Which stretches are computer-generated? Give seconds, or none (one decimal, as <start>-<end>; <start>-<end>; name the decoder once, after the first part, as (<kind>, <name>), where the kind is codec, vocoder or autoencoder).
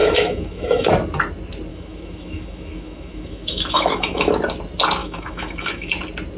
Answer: 0.0-0.9 (autoencoder, DAC-VAE); 1.7-4.3; 5.0-5.9